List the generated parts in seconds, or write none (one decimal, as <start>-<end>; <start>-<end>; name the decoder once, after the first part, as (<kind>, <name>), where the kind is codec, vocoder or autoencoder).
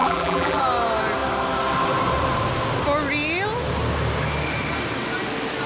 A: 0.0-0.6 (vocoder, BigVGAN v2)